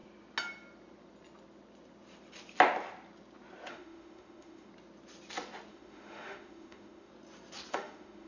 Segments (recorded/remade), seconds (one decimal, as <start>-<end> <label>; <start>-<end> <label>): 0.0-3.7 recorded; 3.7-4.7 remade; 4.7-5.7 recorded; 5.7-7.1 remade; 7.1-7.7 recorded; 7.7-8.3 remade